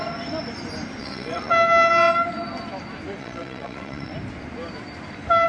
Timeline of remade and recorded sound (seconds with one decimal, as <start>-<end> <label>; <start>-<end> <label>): 0.0-1.0 recorded; 1.0-1.5 remade; 1.5-3.2 recorded; 3.2-4.1 remade; 4.1-5.5 recorded